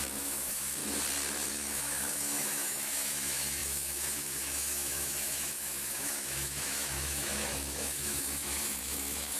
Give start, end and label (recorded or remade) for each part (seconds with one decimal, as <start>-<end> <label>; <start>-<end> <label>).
0.0-0.8 remade; 0.8-1.5 recorded; 1.5-9.4 remade